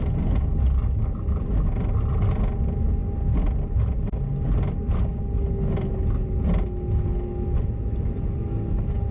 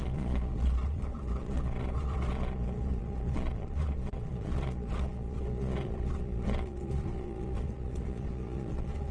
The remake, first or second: second